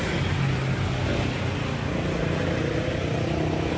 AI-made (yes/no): no